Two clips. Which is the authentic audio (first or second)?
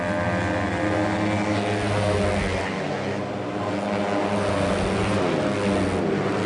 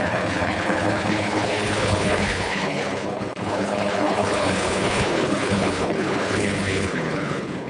first